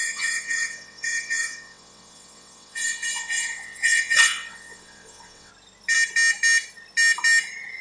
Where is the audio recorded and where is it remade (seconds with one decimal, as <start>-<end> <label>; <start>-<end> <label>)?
0.0-5.5 remade; 5.5-7.8 recorded